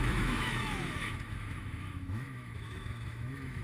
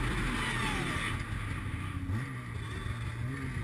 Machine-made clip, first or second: first